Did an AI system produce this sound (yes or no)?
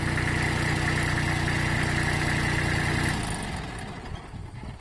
no